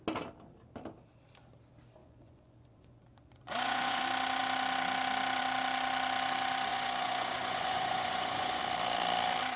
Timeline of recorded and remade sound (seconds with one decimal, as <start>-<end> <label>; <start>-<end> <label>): 0.0-2.0 recorded; 2.0-4.0 remade; 4.0-6.7 recorded; 6.7-8.6 remade; 8.6-9.6 recorded